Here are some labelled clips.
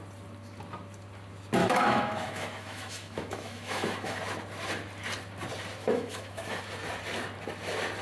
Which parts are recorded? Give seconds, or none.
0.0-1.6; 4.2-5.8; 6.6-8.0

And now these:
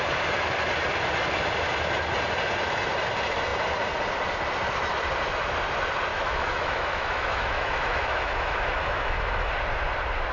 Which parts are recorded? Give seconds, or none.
0.0-6.1; 9.5-10.3

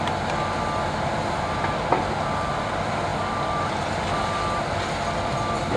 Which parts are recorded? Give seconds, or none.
0.0-5.8